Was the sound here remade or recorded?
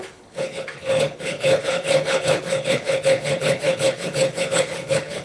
remade